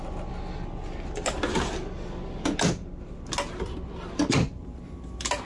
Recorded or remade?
recorded